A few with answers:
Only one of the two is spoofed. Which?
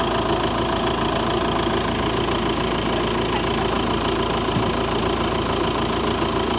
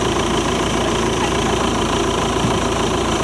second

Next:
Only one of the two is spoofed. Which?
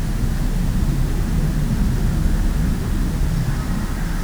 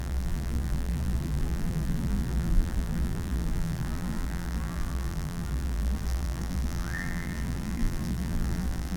second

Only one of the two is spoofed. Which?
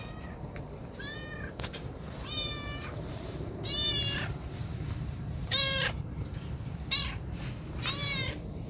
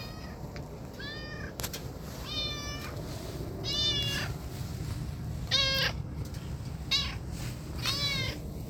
first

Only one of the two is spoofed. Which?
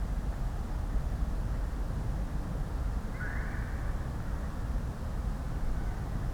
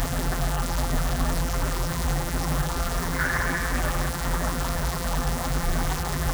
second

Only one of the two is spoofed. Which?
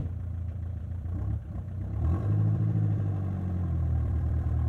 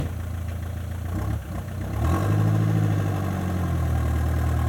first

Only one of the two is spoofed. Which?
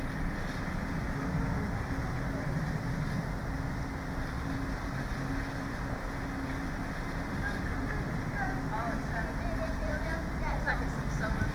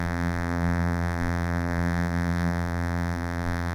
second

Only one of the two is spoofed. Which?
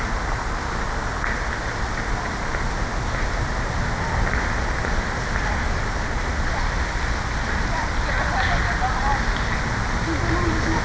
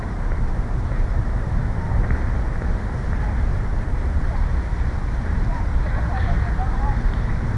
second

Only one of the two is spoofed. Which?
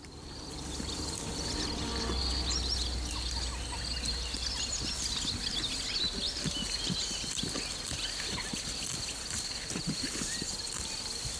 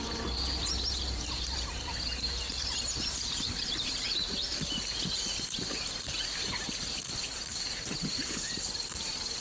second